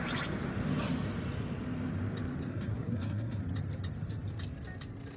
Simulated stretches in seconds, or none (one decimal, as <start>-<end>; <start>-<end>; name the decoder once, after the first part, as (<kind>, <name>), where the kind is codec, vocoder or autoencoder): 2.5-3.4 (codec, SNAC)